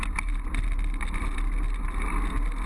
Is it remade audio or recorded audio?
recorded